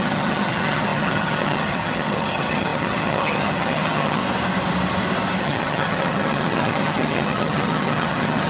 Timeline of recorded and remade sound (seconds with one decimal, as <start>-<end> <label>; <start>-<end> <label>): 0.0-4.2 remade; 4.2-5.4 recorded; 5.4-8.5 remade